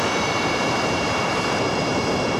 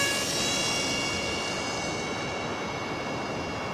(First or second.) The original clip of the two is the second